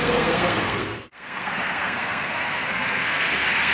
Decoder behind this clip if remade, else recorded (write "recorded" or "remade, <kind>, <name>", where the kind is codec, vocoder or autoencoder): remade, codec, SNAC